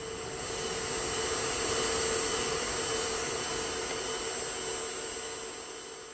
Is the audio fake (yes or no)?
no